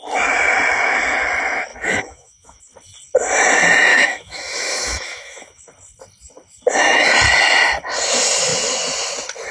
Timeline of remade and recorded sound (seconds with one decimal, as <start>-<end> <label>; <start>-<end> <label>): 0.0-1.7 recorded; 1.7-2.6 remade; 2.6-3.9 recorded; 3.9-5.6 remade; 5.6-9.5 recorded